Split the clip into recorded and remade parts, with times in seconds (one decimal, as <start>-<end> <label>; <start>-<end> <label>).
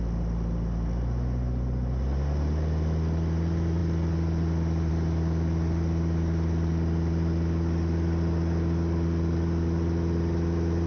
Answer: 0.0-10.9 recorded